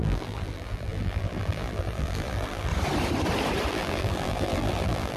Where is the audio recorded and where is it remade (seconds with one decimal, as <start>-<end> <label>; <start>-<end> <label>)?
0.0-2.7 remade; 2.7-3.7 recorded; 3.7-5.2 remade